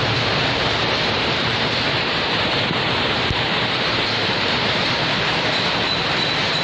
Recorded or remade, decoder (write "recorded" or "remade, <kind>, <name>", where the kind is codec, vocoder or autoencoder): remade, vocoder, BigVGAN v2